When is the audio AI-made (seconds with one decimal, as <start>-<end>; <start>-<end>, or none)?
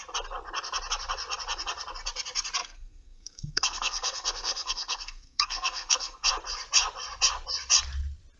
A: 2.6-6.3